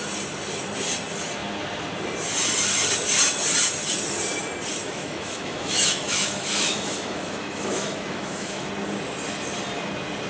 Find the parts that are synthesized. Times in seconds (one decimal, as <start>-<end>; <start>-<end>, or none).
4.8-8.7